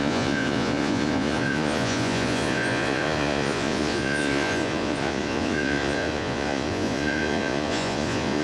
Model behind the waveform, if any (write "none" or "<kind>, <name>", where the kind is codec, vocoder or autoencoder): vocoder, Vocos